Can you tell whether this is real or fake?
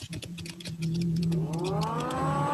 fake